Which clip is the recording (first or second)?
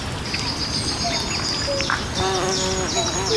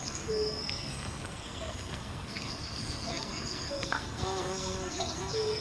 first